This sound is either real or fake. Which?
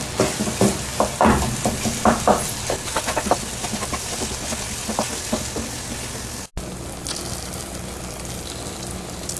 real